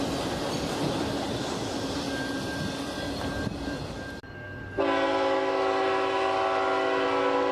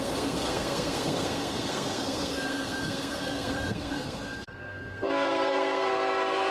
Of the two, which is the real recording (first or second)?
first